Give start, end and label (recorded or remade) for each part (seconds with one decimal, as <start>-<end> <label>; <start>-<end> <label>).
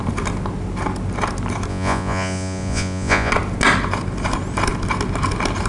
0.0-1.7 recorded; 1.7-3.3 remade; 3.3-5.7 recorded